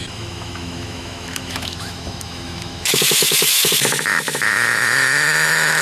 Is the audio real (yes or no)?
no